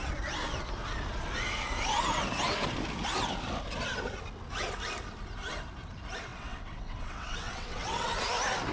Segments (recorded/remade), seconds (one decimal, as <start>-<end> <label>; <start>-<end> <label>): 0.0-6.3 recorded; 6.3-8.1 remade; 8.1-8.7 recorded